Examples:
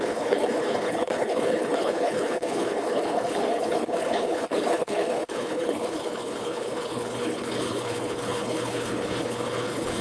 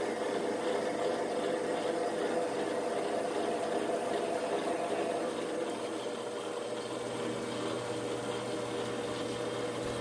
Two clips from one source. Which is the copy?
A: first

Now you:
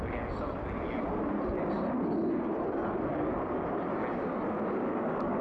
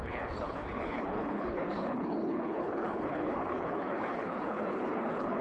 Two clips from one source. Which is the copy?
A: second